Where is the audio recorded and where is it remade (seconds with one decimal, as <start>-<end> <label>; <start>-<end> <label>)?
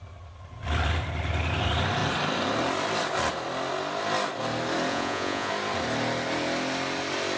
0.0-4.9 recorded; 4.9-5.5 remade; 5.5-7.4 recorded